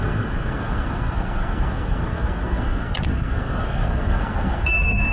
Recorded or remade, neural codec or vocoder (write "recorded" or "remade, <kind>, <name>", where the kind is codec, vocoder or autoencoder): remade, codec, SNAC